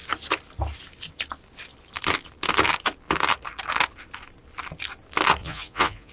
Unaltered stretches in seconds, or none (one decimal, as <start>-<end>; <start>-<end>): 0.0-5.4

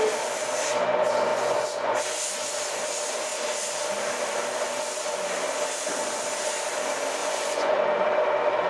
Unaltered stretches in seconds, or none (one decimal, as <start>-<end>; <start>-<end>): 0.0-1.3; 2.0-7.2; 7.8-8.7